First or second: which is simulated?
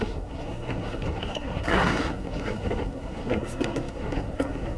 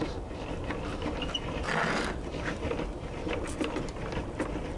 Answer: first